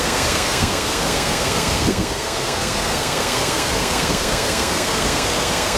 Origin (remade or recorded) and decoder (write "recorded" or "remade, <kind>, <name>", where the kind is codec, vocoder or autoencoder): remade, codec, SNAC